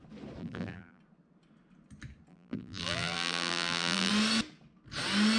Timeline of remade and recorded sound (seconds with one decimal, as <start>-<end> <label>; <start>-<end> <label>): 0.0-0.4 recorded; 0.4-1.0 remade; 1.0-2.3 recorded; 2.3-4.1 remade; 4.1-5.4 recorded